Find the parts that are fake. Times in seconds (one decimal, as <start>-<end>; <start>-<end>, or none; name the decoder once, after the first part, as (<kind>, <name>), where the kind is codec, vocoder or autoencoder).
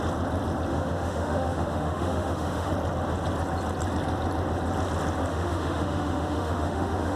0.7-2.7 (autoencoder, DAC-VAE); 5.3-7.2